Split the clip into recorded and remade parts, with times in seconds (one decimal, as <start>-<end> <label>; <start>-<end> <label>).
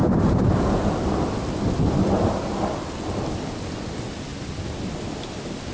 0.0-3.4 remade; 3.4-4.3 recorded; 4.3-5.0 remade; 5.0-5.7 recorded